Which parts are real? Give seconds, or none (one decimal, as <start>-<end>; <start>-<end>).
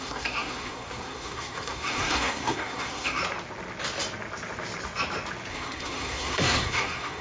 3.2-5.5